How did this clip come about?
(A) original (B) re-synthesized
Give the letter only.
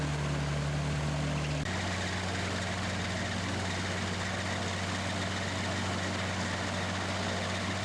A